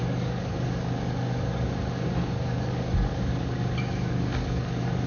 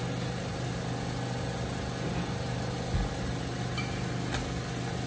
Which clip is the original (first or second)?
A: second